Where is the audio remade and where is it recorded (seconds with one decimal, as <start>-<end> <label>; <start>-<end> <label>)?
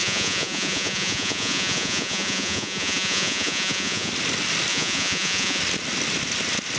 0.0-4.1 remade; 4.1-4.7 recorded; 4.7-5.6 remade; 5.6-6.8 recorded